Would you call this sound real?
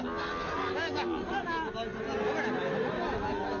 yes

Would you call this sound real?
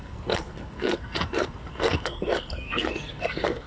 no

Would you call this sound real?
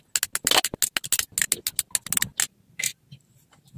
yes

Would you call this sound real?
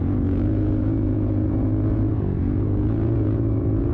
no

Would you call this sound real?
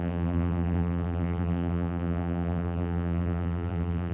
no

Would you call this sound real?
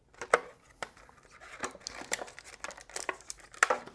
yes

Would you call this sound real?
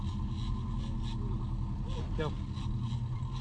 yes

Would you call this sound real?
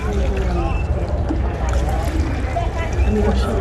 yes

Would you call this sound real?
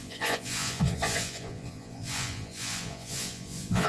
no